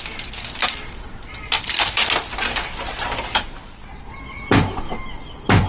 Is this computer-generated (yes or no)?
no